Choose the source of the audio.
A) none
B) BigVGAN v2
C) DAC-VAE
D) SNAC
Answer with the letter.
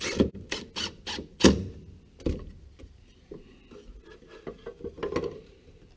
A